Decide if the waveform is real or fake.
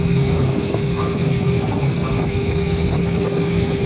fake